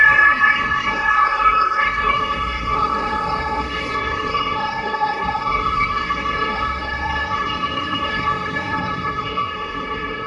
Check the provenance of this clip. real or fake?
fake